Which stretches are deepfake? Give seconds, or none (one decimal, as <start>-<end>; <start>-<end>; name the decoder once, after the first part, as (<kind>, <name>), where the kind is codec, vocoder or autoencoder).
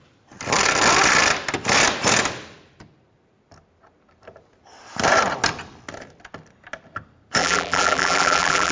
7.4-8.7 (vocoder, BigVGAN v2)